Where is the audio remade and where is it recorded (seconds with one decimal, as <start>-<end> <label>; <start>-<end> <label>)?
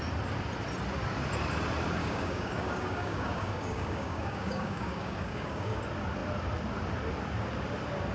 0.0-2.0 recorded; 2.0-5.8 remade; 5.8-8.1 recorded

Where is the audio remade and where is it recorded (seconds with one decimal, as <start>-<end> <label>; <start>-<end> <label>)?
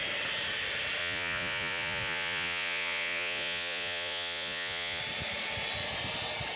0.0-1.0 recorded; 1.0-5.0 remade; 5.0-6.6 recorded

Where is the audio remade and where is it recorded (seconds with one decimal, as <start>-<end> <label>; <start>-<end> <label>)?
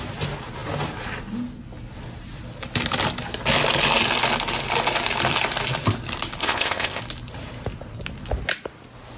0.0-6.4 recorded; 6.4-7.0 remade; 7.0-9.2 recorded